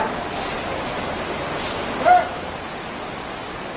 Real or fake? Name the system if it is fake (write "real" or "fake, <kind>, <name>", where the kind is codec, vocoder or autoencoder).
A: real